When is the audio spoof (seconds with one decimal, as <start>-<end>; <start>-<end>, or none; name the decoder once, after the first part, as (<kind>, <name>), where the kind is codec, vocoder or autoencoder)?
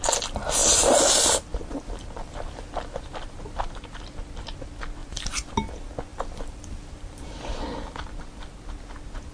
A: 1.5-3.8 (vocoder, BigVGAN v2); 5.0-5.5; 6.1-7.7